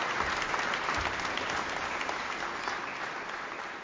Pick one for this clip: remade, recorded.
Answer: recorded